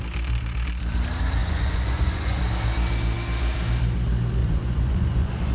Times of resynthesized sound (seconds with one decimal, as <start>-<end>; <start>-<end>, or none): 1.4-2.4; 4.4-5.5